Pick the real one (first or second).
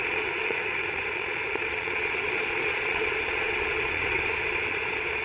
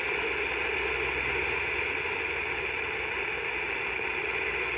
second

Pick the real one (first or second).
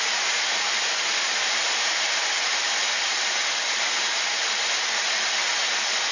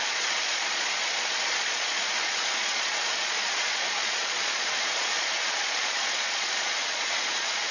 first